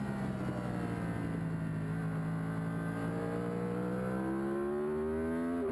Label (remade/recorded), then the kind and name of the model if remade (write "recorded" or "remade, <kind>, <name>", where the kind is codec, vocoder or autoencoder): recorded